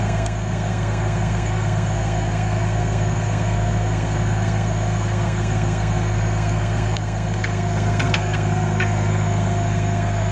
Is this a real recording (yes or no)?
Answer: no